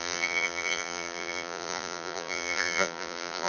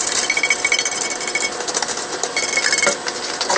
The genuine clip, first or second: second